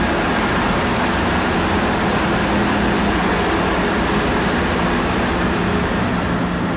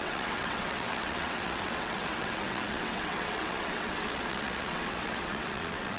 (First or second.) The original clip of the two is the first